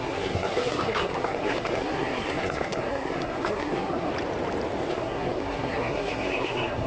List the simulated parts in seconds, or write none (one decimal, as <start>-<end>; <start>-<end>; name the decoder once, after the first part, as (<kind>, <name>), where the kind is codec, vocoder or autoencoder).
0.0-4.1 (codec, SNAC); 4.9-6.9